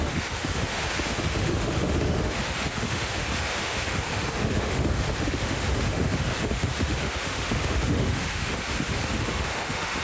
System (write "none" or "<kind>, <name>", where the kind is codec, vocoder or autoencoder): autoencoder, DAC-VAE